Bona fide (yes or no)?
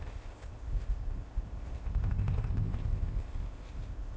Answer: no